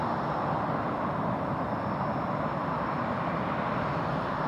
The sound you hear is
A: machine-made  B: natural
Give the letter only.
B